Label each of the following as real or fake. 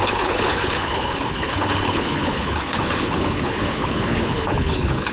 fake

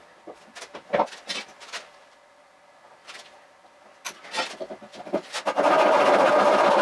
real